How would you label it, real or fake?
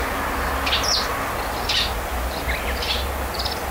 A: real